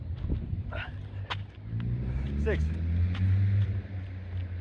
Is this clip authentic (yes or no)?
yes